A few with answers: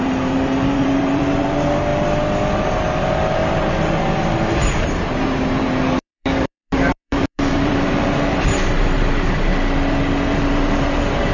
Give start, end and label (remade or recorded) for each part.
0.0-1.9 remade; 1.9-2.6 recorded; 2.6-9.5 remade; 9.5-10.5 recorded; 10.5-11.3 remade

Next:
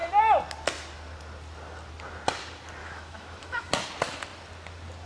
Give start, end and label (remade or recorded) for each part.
0.0-2.8 recorded; 2.8-3.7 remade; 3.7-5.1 recorded

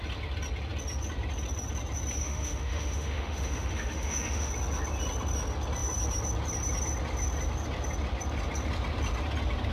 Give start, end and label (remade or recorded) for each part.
0.0-2.2 recorded; 2.2-4.5 remade; 4.5-9.7 recorded

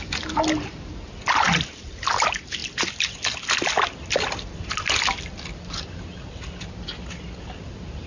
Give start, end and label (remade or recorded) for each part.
0.0-8.1 recorded

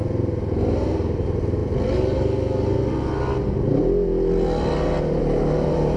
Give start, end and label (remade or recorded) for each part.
0.0-6.0 recorded

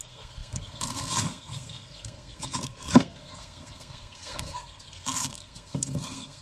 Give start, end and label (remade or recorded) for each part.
0.0-6.4 remade

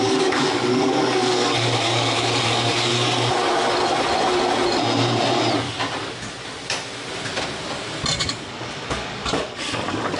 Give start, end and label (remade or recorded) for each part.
0.0-2.9 remade; 2.9-8.2 recorded; 8.2-10.2 remade